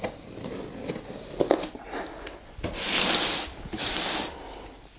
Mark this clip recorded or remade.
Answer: recorded